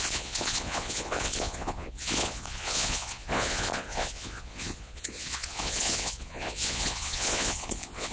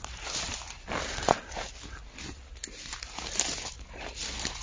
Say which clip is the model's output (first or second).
first